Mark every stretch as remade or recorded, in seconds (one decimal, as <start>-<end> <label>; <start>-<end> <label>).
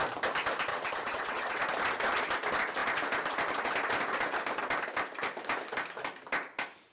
0.0-0.7 recorded; 0.7-1.6 remade; 1.6-6.9 recorded